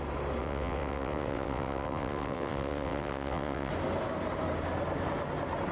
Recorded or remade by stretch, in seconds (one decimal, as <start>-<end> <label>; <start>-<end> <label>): 0.0-0.4 recorded; 0.4-3.7 remade; 3.7-5.7 recorded